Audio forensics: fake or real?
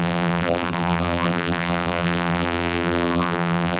fake